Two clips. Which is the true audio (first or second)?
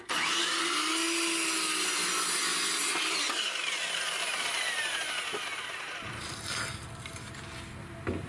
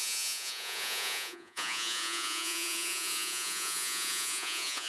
first